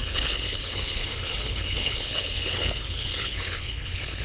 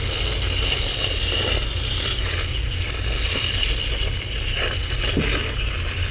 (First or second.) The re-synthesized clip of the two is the first